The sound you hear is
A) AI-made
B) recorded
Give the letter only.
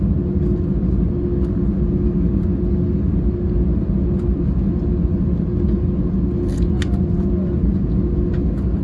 B